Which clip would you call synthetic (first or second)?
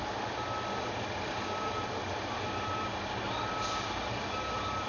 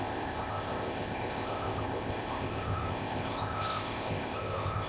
second